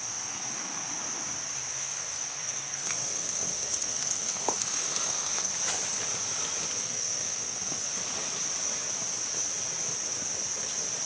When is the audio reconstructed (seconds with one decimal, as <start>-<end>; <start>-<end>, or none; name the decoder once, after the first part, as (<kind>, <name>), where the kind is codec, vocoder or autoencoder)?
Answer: 0.0-0.9 (codec, SNAC); 1.8-5.5; 6.8-7.9